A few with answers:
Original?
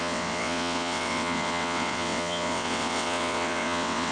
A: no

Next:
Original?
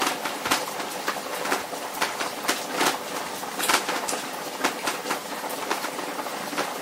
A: no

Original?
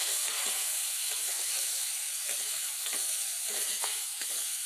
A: no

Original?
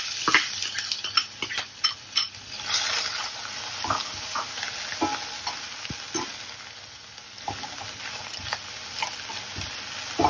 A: yes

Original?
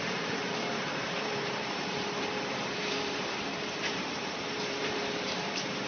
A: no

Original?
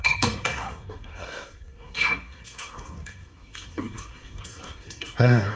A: no